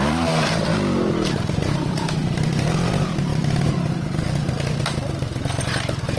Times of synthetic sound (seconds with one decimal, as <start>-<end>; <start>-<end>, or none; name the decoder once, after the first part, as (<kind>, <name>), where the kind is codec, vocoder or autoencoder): 0.0-6.2 (vocoder, BigVGAN v2)